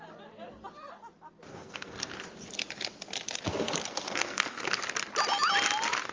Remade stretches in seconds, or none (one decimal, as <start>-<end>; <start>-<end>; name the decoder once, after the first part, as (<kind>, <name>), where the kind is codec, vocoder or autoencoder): 1.5-2.1 (codec, SNAC); 3.5-4.8